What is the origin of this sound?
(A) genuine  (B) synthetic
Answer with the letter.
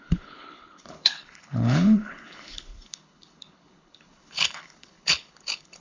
B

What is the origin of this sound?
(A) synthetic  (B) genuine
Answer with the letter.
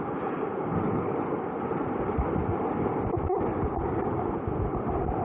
B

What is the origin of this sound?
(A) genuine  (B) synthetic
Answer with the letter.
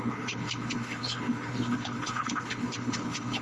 B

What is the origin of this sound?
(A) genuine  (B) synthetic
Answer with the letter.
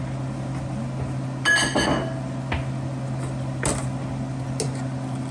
A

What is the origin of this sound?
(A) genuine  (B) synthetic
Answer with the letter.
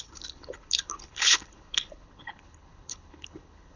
B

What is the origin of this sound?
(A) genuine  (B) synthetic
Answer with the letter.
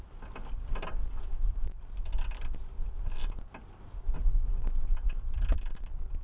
A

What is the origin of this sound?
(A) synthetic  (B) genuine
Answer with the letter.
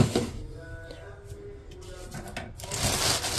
B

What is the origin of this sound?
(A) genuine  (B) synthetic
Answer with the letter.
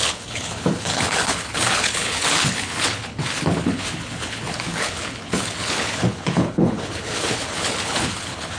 B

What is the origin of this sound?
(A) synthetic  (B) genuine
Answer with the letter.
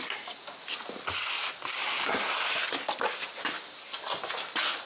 B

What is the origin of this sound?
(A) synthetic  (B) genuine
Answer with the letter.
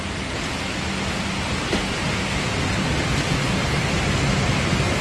B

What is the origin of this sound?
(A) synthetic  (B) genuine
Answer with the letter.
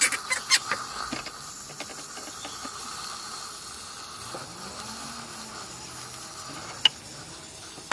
B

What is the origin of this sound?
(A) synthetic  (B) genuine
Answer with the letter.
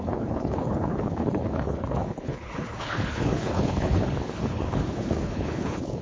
A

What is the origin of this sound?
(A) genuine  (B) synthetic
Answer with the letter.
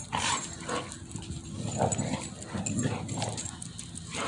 A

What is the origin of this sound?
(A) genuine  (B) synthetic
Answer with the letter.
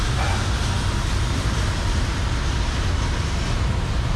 A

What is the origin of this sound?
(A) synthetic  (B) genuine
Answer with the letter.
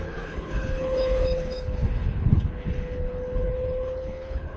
A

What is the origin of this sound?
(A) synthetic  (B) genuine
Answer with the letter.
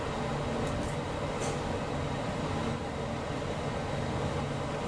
B